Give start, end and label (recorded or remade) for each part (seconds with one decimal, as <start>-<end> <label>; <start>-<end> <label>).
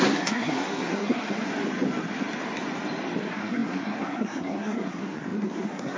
0.0-1.5 remade; 1.5-3.2 recorded; 3.2-6.0 remade